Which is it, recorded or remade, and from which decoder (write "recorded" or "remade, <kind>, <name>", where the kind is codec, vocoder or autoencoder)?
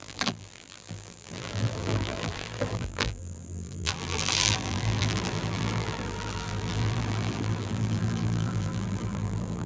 remade, vocoder, BigVGAN v2